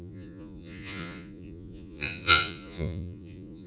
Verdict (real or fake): fake